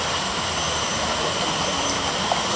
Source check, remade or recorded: recorded